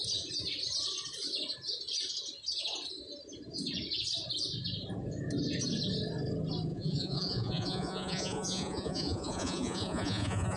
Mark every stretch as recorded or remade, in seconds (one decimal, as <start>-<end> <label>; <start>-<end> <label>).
0.0-6.7 recorded; 6.7-10.6 remade